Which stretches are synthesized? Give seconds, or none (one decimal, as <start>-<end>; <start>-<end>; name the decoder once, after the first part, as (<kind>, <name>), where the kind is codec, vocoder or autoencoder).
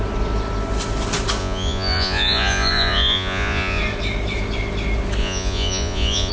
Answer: 1.4-3.8 (vocoder, Vocos); 5.2-6.3